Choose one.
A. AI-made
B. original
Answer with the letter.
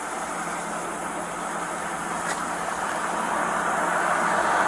B